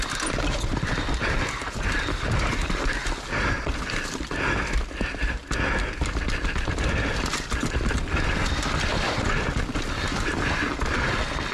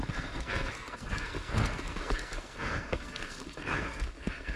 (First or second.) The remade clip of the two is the second